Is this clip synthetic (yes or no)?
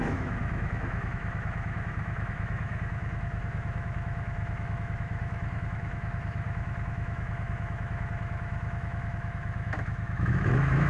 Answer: yes